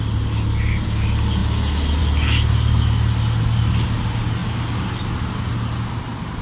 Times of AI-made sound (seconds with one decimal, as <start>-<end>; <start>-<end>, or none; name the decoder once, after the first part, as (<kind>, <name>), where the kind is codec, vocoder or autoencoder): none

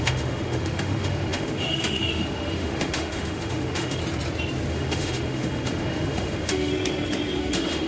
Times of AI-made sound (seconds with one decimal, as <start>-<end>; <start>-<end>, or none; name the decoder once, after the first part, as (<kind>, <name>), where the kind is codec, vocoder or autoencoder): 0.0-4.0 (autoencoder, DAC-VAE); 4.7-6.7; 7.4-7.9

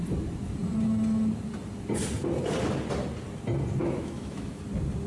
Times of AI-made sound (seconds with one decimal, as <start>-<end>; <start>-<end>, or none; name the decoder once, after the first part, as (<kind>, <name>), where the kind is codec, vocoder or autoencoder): 3.8-4.6 (autoencoder, DAC-VAE)